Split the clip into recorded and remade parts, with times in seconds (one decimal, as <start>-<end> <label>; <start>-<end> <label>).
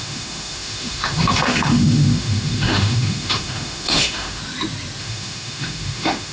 0.0-4.4 remade; 4.4-5.0 recorded; 5.0-6.3 remade